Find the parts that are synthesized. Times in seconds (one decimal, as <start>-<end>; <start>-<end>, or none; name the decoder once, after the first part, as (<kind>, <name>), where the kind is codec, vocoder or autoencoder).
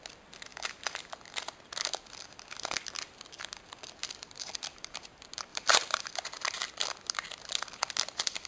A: 5.5-6.0 (vocoder, BigVGAN v2)